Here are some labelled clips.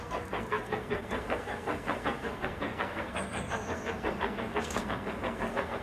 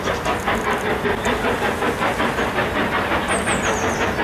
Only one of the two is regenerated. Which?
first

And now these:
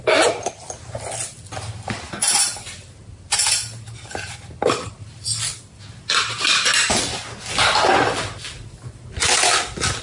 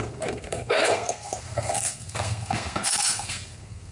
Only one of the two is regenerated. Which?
second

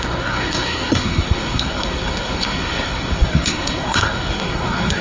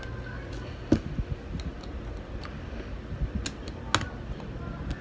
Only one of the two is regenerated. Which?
first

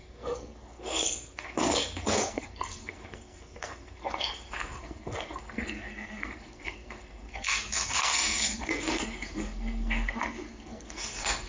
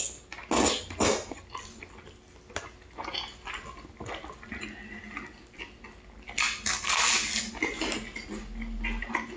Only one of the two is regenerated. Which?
first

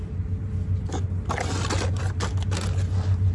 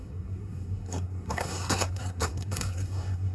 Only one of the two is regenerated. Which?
second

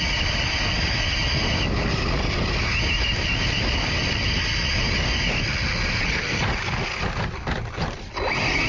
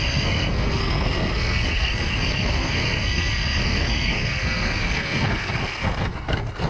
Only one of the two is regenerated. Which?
second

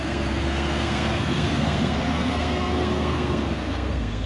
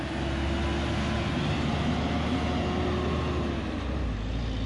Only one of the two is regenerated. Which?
first